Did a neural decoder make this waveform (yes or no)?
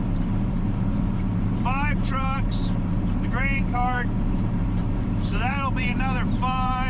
yes